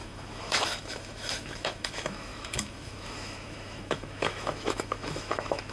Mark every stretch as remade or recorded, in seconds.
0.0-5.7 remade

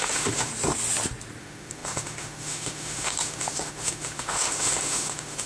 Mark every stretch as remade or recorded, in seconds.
0.0-0.5 remade; 0.5-1.4 recorded; 1.4-5.5 remade

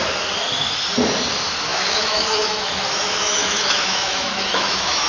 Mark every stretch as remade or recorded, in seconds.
0.0-1.7 recorded; 1.7-5.1 remade

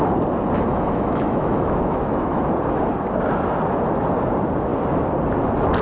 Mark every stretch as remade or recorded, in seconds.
0.0-0.7 recorded; 0.7-2.4 remade; 2.4-5.8 recorded

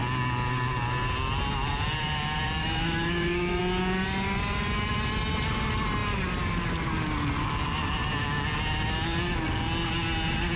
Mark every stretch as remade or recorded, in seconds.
0.0-2.6 recorded; 2.6-3.6 remade; 3.6-10.6 recorded